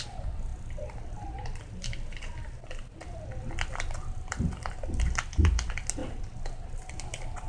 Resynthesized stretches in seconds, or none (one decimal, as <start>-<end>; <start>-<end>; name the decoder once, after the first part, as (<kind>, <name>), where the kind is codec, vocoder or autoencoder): none